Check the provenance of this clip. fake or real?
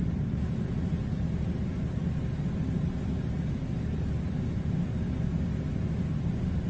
real